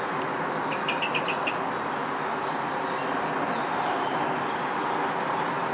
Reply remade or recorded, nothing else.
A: recorded